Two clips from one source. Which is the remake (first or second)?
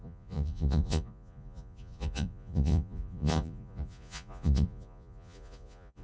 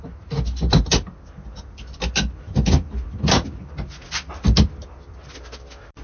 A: first